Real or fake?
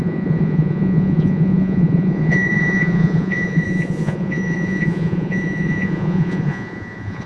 fake